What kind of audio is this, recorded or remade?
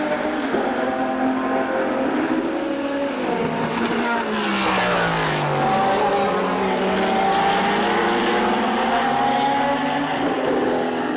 recorded